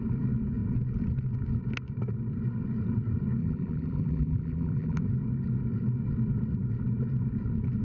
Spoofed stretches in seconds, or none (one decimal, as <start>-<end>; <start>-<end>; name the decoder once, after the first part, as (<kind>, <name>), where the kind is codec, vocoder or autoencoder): 3.4-5.0 (vocoder, BigVGAN v2)